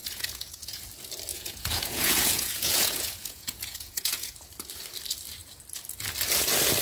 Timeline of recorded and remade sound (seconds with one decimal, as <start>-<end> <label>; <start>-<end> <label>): 0.0-0.8 remade; 0.8-1.3 recorded; 1.3-4.3 remade; 4.3-6.8 recorded